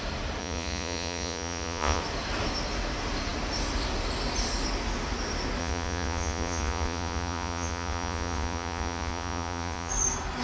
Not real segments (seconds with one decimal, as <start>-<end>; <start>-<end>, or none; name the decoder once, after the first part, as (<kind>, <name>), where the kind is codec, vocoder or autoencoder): 0.4-2.0 (vocoder, Vocos); 5.6-9.9